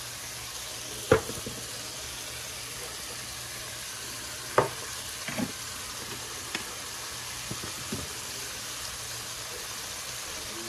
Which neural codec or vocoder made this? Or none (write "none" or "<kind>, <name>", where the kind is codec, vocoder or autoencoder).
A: none